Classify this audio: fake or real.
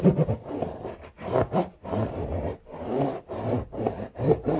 fake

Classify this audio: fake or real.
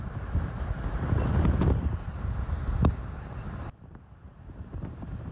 fake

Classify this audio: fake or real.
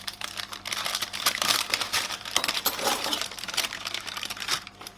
fake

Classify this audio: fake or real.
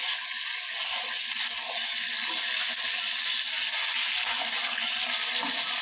real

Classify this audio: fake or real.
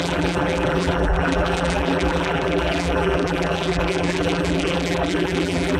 fake